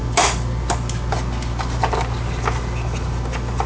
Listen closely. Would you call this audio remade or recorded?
recorded